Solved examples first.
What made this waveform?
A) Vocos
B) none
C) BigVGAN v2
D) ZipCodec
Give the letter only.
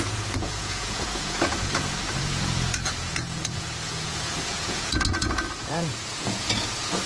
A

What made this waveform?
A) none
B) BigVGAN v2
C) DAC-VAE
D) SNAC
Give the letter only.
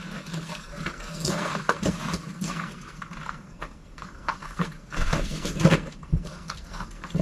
D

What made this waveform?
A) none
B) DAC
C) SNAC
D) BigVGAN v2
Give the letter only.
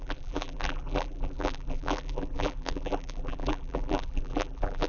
D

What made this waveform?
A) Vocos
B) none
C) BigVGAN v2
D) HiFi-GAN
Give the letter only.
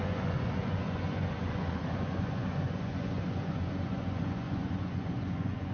A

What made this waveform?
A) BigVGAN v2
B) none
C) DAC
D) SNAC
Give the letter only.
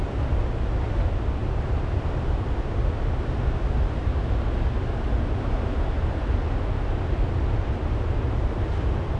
B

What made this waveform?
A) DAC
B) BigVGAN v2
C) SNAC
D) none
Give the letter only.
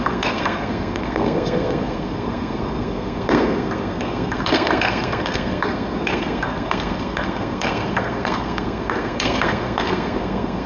C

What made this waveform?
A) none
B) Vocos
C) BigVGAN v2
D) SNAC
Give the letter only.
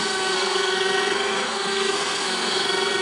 D